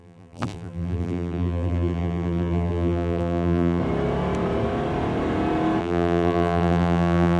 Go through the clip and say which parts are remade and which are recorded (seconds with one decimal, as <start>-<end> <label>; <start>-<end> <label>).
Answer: 0.0-3.8 remade; 3.8-5.8 recorded; 5.8-7.4 remade